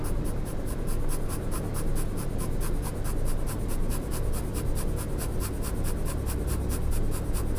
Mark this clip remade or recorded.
recorded